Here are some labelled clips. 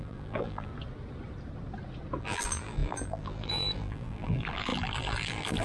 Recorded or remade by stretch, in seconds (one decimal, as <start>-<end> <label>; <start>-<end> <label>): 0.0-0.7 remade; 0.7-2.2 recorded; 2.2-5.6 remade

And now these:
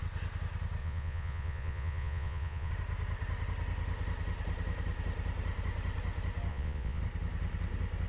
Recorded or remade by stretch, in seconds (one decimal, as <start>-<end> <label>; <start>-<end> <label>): 0.0-0.8 recorded; 0.8-2.7 remade; 2.7-6.5 recorded; 6.5-7.0 remade; 7.0-8.1 recorded

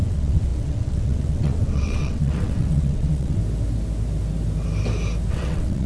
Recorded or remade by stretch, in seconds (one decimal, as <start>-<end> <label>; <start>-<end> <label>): 0.0-3.4 remade; 3.4-5.3 recorded; 5.3-5.9 remade